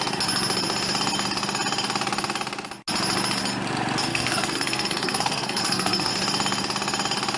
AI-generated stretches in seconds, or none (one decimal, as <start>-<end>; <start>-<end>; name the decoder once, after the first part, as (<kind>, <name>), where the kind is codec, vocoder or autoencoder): 4.1-6.1 (codec, SNAC)

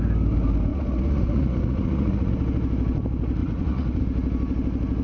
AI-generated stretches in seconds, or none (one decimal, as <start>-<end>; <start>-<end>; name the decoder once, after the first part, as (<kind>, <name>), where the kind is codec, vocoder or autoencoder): 0.7-2.3 (vocoder, Vocos); 3.4-4.0